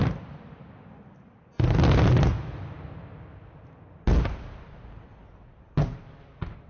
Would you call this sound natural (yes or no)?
yes